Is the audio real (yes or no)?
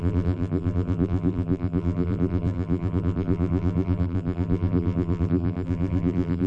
no